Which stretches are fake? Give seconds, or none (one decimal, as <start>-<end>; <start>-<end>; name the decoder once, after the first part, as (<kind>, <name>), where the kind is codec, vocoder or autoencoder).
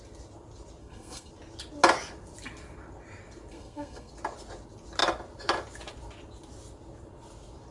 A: 0.8-1.3 (codec, SNAC); 3.5-4.1